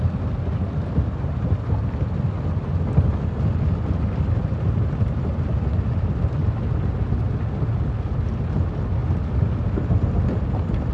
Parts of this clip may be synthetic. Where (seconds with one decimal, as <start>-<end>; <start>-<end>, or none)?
none